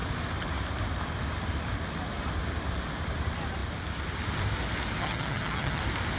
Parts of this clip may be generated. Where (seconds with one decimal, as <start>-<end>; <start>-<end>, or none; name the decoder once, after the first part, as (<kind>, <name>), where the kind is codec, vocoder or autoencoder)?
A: 5.0-5.8 (vocoder, HiFi-GAN)